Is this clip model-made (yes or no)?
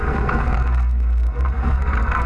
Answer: yes